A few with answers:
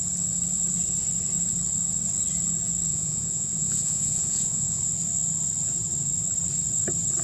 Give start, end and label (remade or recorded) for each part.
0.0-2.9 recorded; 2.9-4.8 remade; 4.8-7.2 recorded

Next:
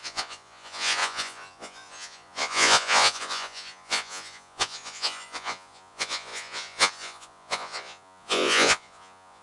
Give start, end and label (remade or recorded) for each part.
0.0-9.4 remade

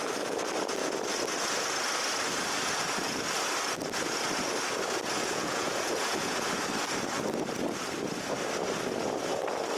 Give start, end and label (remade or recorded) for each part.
0.0-5.2 recorded; 5.2-6.4 remade; 6.4-9.8 recorded

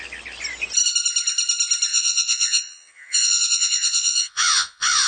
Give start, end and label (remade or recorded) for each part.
0.0-1.9 recorded; 1.9-5.1 remade

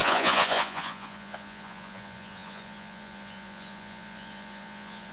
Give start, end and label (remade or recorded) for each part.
0.0-5.1 remade

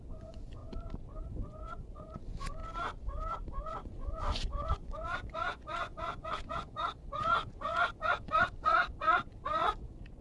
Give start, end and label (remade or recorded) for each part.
0.0-0.6 remade; 0.6-1.2 recorded; 1.2-2.6 remade; 2.6-3.5 recorded; 3.5-10.2 remade

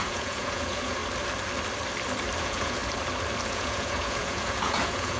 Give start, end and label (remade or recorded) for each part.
0.0-1.0 remade; 1.0-2.4 recorded; 2.4-2.8 remade; 2.8-3.5 recorded; 3.5-5.2 remade

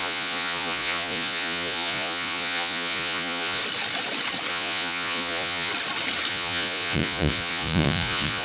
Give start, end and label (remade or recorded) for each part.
0.0-3.6 remade; 3.6-4.5 recorded; 4.5-5.7 remade; 5.7-6.3 recorded; 6.3-8.4 remade